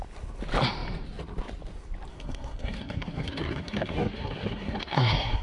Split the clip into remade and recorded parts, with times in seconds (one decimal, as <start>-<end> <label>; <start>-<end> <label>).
0.0-2.1 recorded; 2.1-5.4 remade